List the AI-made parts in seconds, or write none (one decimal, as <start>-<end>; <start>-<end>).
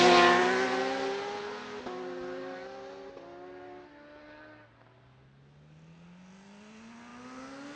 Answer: none